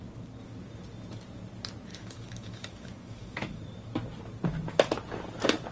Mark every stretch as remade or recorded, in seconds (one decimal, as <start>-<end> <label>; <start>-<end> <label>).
0.0-1.9 recorded; 1.9-3.6 remade; 3.6-5.7 recorded